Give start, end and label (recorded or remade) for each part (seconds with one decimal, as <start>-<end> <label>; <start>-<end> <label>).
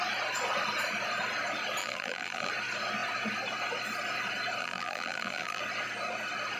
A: 0.0-1.8 recorded; 1.8-2.5 remade; 2.5-4.6 recorded; 4.6-5.6 remade; 5.6-6.6 recorded